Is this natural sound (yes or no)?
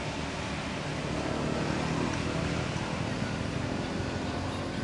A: yes